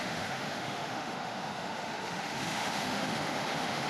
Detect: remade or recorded remade